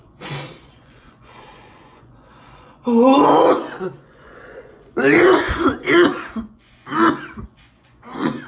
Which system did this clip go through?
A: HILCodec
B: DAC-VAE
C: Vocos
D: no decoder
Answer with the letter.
C